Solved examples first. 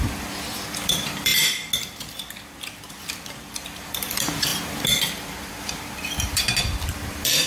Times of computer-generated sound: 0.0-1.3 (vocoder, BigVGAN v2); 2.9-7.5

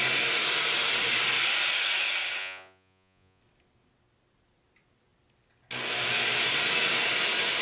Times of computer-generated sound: 2.4-3.4 (vocoder, Vocos)

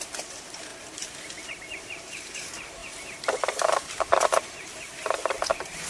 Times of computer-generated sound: 0.0-0.7 (vocoder, BigVGAN v2); 1.8-5.9

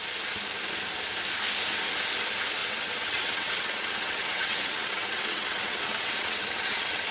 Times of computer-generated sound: 2.6-7.1 (vocoder, WaveNeXt)

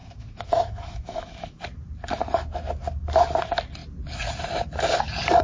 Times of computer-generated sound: 0.0-1.6 (autoencoder, DAC-VAE)

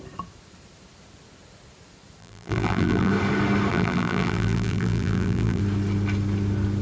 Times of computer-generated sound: 2.2-3.1 (vocoder, BigVGAN v2); 3.7-5.6